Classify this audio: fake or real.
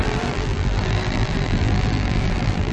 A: fake